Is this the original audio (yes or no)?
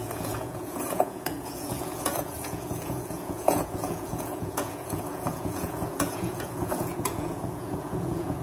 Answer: no